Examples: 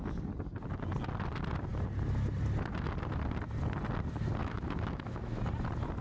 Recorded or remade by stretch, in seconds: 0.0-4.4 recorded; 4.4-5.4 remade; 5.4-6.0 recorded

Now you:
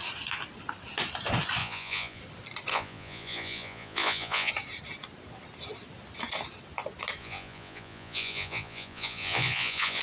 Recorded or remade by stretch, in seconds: 0.0-1.6 recorded; 1.6-2.2 remade; 2.2-2.7 recorded; 2.7-4.5 remade; 4.5-7.2 recorded; 7.2-10.0 remade